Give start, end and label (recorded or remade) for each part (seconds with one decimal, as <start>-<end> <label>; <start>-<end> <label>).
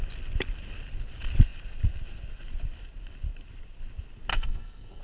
0.0-4.3 recorded; 4.3-5.0 remade